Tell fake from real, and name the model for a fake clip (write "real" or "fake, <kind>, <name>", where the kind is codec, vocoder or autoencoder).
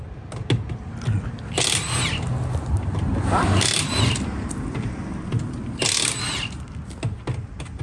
real